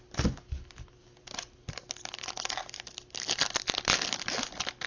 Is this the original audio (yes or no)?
yes